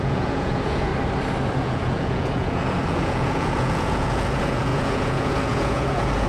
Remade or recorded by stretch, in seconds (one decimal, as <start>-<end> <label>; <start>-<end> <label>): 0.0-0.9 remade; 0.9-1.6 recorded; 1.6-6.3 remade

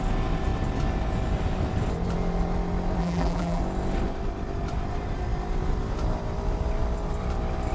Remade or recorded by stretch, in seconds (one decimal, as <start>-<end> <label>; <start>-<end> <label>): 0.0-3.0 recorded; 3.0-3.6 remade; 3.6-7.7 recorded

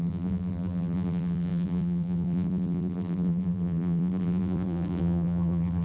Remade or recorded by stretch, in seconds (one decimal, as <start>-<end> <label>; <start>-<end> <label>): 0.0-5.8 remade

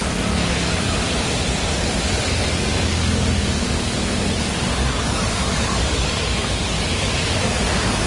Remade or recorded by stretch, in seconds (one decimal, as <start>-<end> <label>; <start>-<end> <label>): 0.0-1.0 remade; 1.0-2.5 recorded; 2.5-8.1 remade

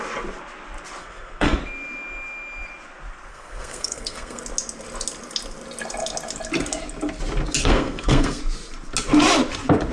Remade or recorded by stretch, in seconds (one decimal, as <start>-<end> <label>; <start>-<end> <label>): 0.0-1.0 recorded; 1.0-1.6 remade; 1.6-3.3 recorded; 3.3-4.4 remade; 4.4-7.6 recorded; 7.6-8.4 remade; 8.4-9.9 recorded

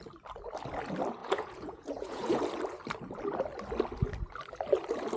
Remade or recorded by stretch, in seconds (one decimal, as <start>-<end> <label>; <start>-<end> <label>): 0.0-1.2 recorded; 1.2-2.4 remade; 2.4-5.2 recorded

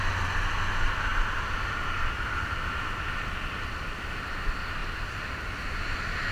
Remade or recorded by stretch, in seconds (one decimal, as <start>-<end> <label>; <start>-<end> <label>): 0.0-6.3 recorded